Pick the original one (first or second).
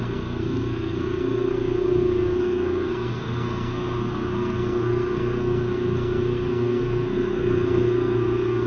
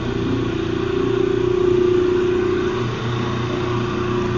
second